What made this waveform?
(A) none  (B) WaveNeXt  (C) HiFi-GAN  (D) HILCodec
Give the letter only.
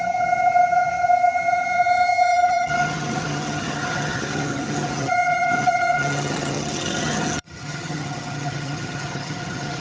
C